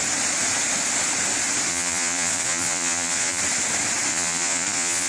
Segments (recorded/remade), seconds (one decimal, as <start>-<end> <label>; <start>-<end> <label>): 0.0-1.7 recorded; 1.7-3.4 remade; 3.4-4.1 recorded; 4.1-5.1 remade